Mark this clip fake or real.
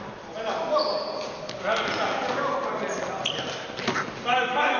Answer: real